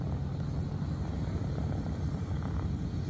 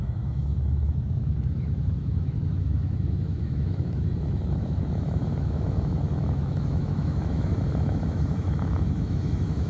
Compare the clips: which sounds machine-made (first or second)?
second